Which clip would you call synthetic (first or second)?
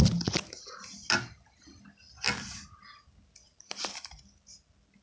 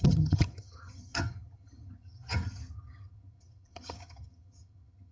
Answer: second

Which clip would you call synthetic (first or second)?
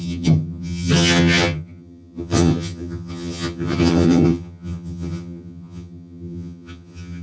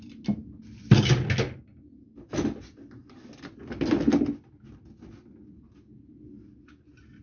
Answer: first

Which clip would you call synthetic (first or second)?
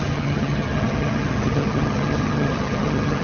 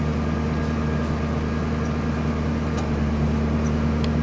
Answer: first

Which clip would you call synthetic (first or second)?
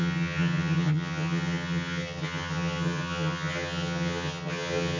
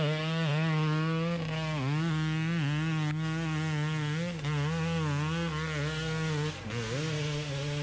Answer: first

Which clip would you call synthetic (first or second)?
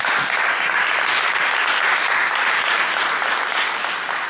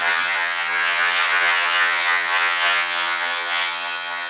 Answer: second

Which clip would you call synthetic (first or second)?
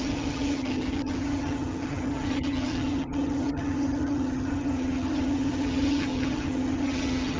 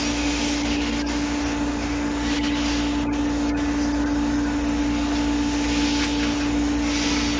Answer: first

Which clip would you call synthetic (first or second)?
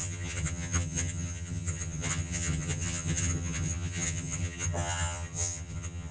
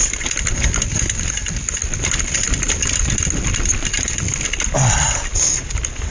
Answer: first